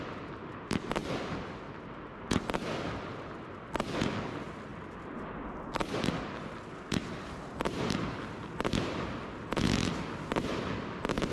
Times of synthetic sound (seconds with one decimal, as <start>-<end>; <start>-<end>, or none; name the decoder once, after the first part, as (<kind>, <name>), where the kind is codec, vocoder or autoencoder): 1.0-1.9 (vocoder, BigVGAN v2); 4.7-6.2